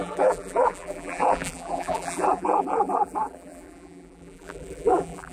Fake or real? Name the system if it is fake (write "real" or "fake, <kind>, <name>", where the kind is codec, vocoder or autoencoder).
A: fake, vocoder, BigVGAN v2